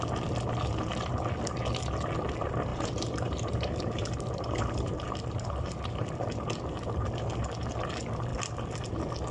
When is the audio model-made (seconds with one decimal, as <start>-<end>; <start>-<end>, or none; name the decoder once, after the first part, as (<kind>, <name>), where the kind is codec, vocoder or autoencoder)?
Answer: 2.7-6.1 (vocoder, BigVGAN v2)